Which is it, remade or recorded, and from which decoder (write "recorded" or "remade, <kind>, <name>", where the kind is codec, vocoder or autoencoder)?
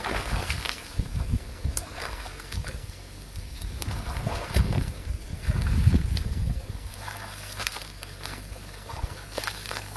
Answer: remade, codec, SNAC